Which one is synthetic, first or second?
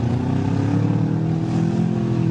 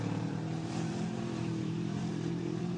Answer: second